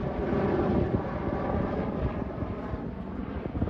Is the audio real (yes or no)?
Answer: yes